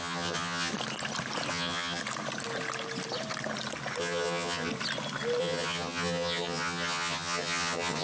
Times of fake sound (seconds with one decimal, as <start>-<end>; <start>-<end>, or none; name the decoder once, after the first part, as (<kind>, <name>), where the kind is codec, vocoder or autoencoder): 0.0-0.7 (vocoder, HiFi-GAN); 1.5-2.0; 4.0-4.7; 5.4-8.0